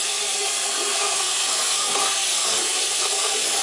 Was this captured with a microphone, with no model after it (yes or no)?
no